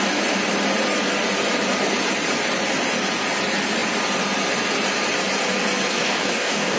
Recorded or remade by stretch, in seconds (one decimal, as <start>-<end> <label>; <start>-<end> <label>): 0.0-5.9 recorded; 5.9-6.8 remade